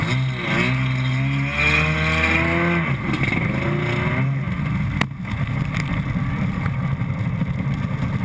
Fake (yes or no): no